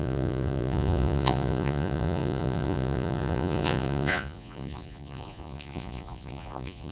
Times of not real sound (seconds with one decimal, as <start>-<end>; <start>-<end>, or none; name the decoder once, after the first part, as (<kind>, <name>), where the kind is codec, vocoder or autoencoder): 0.0-6.9 (vocoder, Vocos)